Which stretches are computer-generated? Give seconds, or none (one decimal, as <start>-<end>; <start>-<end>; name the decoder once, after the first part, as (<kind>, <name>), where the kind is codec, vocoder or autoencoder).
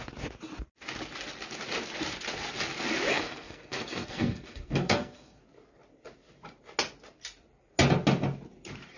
3.1-5.4 (codec, SNAC)